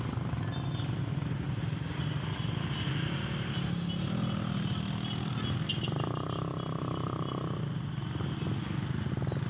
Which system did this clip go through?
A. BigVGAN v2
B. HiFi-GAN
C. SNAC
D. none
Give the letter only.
D